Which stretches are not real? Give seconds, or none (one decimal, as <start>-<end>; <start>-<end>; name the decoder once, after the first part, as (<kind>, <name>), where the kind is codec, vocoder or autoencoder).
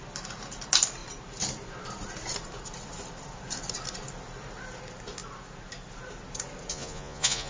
6.7-7.5 (vocoder, Vocos)